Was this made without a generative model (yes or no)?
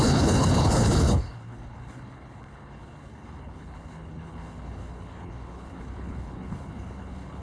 no